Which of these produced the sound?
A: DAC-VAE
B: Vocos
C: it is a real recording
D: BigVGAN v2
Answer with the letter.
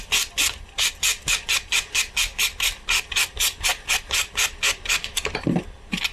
C